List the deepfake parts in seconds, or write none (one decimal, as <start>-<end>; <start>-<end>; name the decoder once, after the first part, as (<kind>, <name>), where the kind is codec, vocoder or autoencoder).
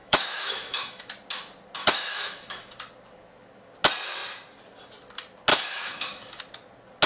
0.0-1.1 (autoencoder, DAC-VAE); 1.8-2.8; 5.5-6.4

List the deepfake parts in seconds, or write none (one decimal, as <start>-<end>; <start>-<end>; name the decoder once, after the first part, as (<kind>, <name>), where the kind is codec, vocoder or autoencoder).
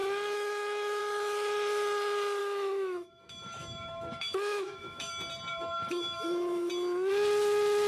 0.0-1.0 (autoencoder, DAC-VAE); 2.4-5.1; 5.5-6.7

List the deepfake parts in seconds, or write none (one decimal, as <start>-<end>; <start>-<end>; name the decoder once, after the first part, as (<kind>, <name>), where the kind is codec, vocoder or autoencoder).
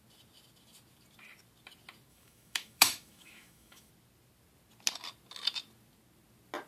2.1-3.9 (autoencoder, DAC-VAE)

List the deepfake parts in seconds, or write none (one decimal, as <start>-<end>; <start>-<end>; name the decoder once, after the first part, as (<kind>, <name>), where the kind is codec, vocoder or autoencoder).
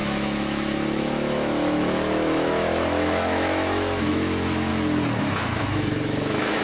0.0-4.7 (autoencoder, DAC-VAE); 5.2-6.6